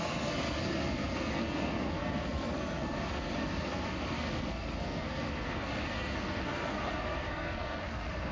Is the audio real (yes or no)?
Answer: no